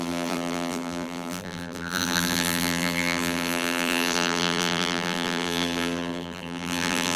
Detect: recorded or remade remade